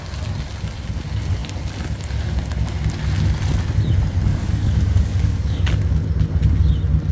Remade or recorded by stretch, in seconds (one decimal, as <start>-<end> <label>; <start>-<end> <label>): 0.0-4.3 recorded; 4.3-5.8 remade; 5.8-7.1 recorded